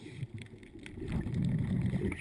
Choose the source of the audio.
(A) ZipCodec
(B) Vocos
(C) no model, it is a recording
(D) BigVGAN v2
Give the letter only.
D